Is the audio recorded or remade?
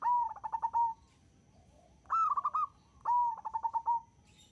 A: recorded